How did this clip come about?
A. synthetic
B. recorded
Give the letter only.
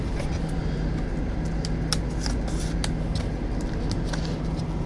B